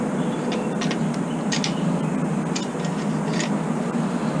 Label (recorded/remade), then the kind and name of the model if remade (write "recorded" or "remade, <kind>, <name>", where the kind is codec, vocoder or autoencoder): recorded